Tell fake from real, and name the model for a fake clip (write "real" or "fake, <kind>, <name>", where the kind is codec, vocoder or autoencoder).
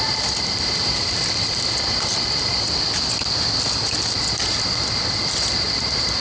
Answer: real